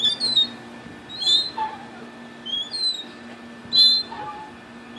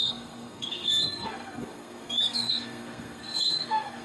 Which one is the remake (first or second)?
second